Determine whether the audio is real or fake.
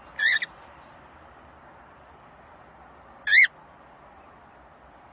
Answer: real